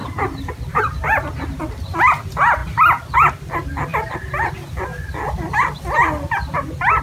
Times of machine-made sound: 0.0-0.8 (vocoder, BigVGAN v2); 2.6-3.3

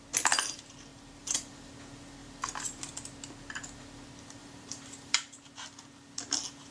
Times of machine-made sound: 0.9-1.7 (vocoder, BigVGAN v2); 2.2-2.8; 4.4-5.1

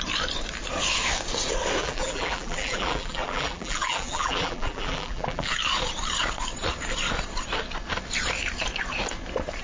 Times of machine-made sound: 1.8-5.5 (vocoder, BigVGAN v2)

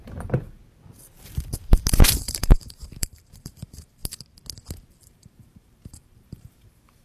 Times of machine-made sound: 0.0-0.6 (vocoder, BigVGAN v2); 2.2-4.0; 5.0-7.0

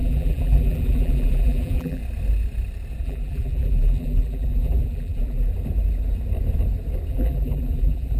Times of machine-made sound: 0.0-2.0 (vocoder, BigVGAN v2); 3.0-5.5; 7.1-8.2

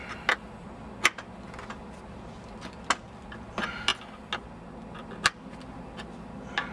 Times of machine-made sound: none